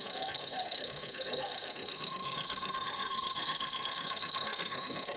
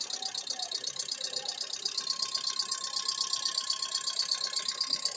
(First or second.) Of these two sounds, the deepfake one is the first